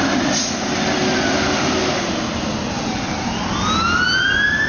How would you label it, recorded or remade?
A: recorded